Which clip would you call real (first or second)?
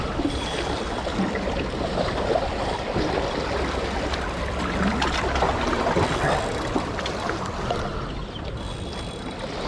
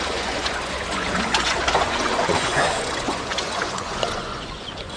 first